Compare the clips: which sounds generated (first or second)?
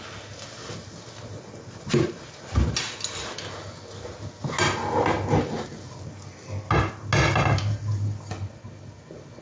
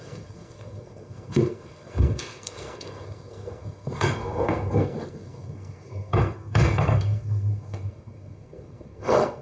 second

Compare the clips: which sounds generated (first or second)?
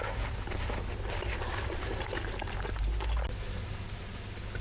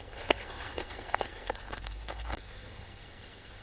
second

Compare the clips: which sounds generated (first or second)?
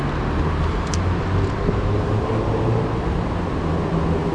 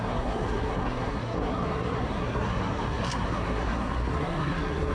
second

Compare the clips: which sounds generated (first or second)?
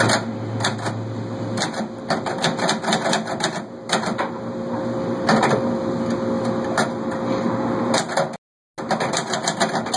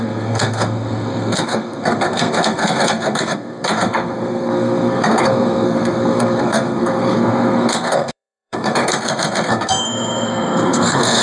second